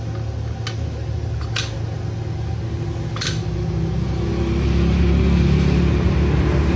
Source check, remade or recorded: recorded